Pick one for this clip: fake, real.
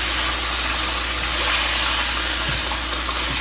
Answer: real